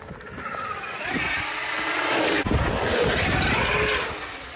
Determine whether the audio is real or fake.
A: real